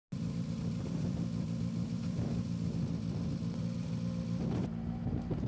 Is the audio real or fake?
real